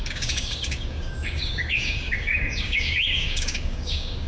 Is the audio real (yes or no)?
no